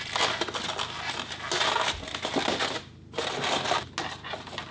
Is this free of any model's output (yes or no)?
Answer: yes